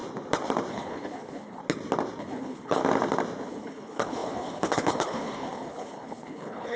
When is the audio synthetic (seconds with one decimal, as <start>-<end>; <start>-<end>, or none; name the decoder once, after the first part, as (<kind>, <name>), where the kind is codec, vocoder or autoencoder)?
0.7-1.6 (codec, HILCodec); 2.2-2.8; 3.4-6.8